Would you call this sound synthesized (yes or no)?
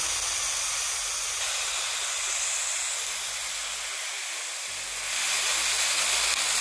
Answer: no